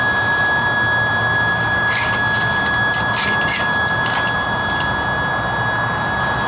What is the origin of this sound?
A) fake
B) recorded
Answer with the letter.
B